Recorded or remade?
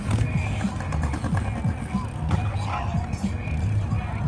recorded